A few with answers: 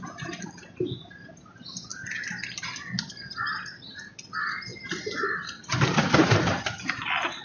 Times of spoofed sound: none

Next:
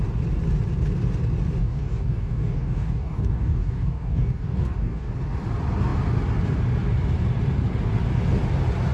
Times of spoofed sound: 1.6-5.1 (codec, DAC)

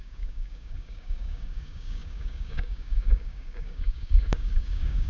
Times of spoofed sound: 0.0-5.1 (codec, DAC)

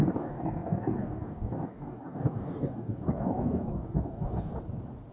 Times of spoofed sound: 0.0-4.5 (codec, DAC)

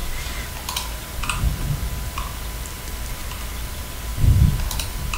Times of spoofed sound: none

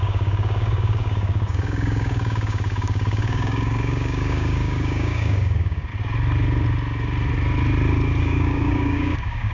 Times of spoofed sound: 0.0-5.9 (codec, DAC); 8.2-9.5

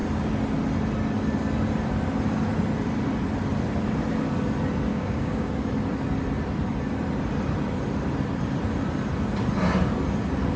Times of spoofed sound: 4.9-5.5 (codec, DAC)

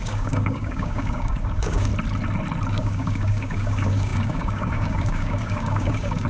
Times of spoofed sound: 0.0-1.9 (codec, DAC); 2.7-6.3